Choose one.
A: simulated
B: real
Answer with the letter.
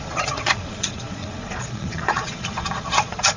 A